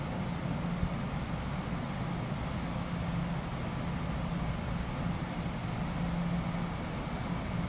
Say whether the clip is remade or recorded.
recorded